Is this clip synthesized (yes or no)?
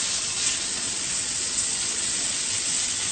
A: yes